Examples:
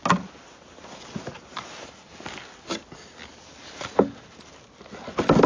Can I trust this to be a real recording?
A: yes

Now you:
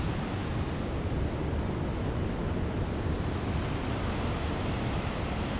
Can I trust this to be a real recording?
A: yes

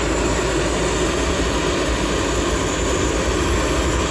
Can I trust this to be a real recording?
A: yes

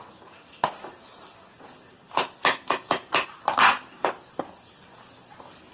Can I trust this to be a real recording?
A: yes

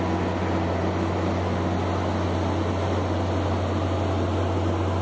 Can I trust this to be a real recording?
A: yes